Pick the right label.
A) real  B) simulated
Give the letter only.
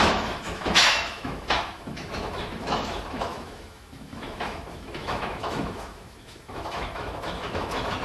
B